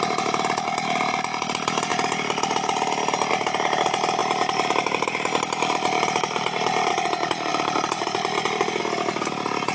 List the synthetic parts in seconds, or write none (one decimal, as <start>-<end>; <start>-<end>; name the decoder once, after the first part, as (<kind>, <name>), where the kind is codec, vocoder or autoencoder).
4.2-6.9 (vocoder, BigVGAN v2); 7.5-8.8